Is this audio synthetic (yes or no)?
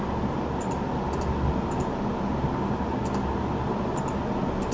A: no